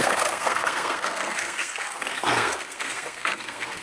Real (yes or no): no